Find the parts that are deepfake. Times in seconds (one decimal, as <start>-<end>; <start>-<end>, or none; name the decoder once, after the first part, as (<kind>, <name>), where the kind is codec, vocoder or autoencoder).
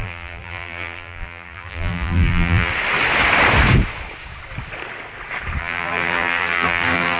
0.0-2.7 (vocoder, BigVGAN v2); 5.6-7.2